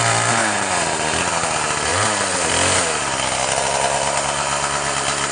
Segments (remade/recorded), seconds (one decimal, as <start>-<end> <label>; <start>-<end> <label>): 0.0-5.3 recorded